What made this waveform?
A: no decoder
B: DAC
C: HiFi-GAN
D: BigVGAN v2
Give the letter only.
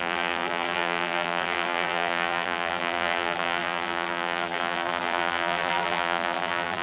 D